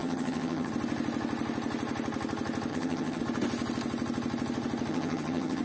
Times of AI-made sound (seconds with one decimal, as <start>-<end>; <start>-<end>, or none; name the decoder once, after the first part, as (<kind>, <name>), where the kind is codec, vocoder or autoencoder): 0.0-0.7 (vocoder, HiFi-GAN); 2.7-3.2; 4.9-5.6